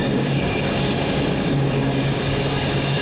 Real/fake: fake